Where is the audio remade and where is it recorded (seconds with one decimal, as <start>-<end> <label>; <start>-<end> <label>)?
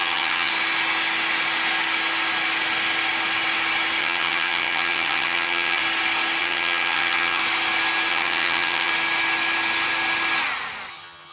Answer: 0.0-0.5 remade; 0.5-4.0 recorded; 4.0-5.8 remade; 5.8-6.4 recorded; 6.4-7.4 remade; 7.4-8.1 recorded; 8.1-8.9 remade; 8.9-10.9 recorded; 10.9-11.3 remade